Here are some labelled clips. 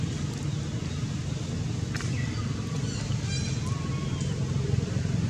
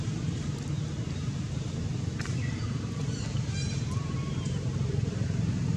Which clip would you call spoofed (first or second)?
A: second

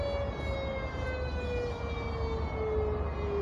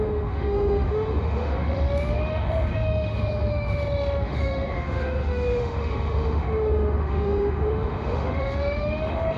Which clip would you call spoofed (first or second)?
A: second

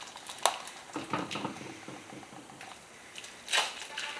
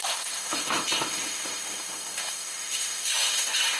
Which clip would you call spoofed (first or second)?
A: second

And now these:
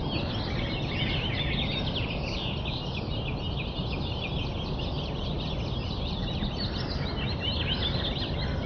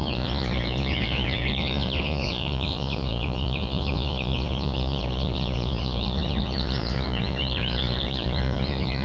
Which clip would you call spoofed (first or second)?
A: second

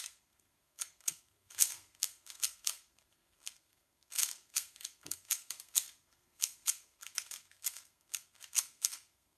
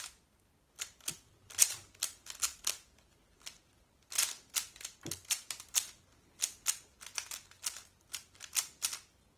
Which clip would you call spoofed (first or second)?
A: first